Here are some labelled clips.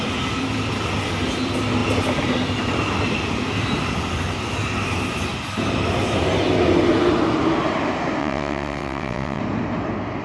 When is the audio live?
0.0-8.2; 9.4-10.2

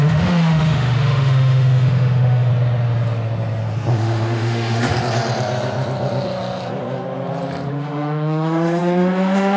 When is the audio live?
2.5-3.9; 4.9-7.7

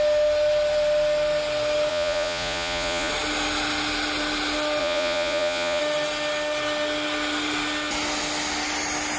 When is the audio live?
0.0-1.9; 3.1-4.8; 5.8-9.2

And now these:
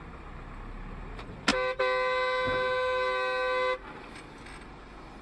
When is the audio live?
0.0-5.2

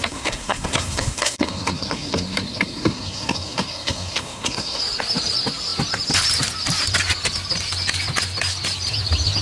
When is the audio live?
4.8-9.4